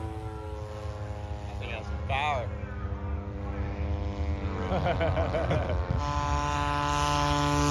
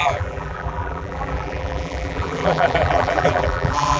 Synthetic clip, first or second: second